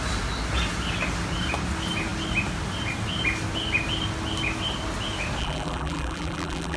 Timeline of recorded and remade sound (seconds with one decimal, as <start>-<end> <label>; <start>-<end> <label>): 0.0-5.4 recorded; 5.4-6.8 remade